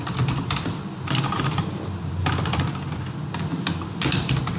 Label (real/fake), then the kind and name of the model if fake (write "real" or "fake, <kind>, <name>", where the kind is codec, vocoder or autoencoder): fake, vocoder, BigVGAN v2